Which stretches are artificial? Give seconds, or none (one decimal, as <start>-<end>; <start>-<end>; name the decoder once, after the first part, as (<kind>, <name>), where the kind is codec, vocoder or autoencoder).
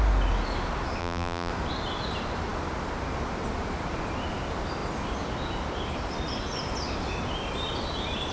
1.0-1.5 (vocoder, BigVGAN v2)